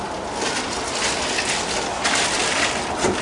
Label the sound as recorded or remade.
recorded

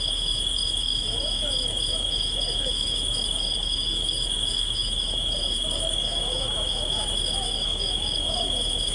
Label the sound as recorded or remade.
remade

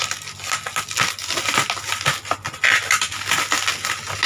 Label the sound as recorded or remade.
recorded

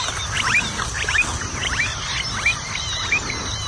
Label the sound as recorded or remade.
recorded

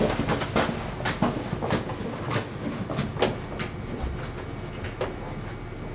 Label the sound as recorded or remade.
recorded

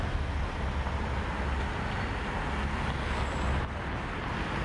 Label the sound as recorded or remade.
recorded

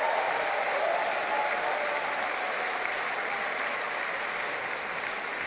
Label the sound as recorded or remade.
recorded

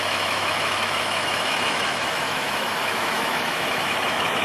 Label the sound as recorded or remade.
remade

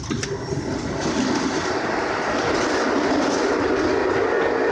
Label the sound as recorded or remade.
recorded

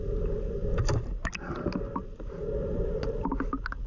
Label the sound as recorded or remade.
recorded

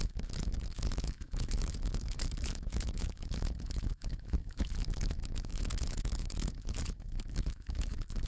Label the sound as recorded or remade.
remade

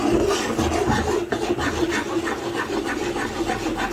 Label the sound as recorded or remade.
recorded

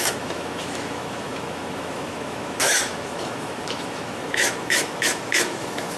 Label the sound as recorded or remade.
remade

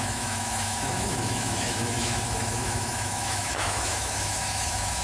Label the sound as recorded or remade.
remade